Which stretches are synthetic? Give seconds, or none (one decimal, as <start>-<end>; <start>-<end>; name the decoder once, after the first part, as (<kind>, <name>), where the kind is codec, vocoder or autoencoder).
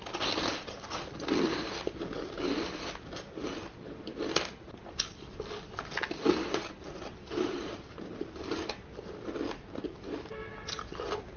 6.4-8.4 (vocoder, BigVGAN v2)